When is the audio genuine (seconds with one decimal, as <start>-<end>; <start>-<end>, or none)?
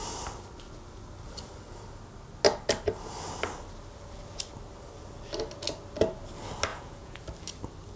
0.0-6.7; 7.2-8.0